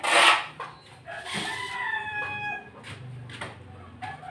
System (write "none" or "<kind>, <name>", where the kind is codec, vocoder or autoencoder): none